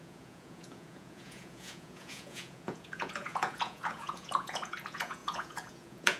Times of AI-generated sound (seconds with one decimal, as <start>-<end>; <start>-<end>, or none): 0.0-6.2